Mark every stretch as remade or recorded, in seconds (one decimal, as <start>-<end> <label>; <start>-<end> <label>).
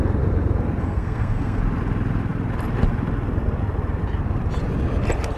0.0-0.8 recorded; 0.8-1.6 remade; 1.6-5.4 recorded